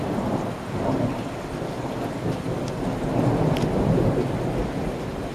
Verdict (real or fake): real